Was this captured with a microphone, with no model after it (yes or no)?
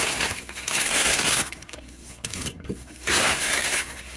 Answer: no